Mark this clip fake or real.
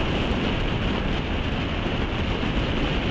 real